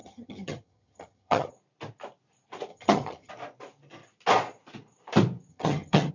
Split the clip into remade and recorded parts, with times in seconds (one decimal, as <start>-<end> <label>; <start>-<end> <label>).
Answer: 0.0-1.5 remade; 1.5-2.7 recorded; 2.7-3.3 remade; 3.3-5.5 recorded; 5.5-6.1 remade